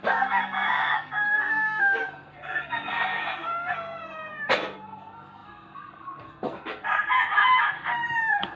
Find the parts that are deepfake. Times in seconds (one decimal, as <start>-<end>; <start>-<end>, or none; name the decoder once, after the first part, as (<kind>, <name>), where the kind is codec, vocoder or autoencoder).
0.0-8.6 (codec, SNAC)